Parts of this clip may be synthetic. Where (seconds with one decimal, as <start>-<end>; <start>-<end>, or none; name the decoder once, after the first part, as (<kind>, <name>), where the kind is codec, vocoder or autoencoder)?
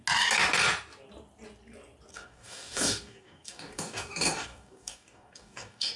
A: 2.1-6.0 (codec, DAC)